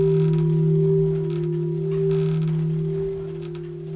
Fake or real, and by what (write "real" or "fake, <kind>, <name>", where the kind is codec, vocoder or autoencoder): real